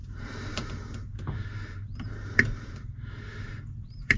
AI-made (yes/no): yes